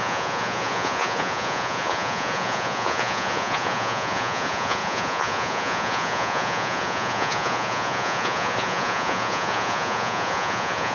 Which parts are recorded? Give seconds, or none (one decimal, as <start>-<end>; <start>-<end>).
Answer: none